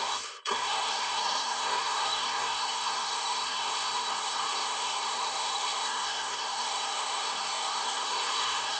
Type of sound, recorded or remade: remade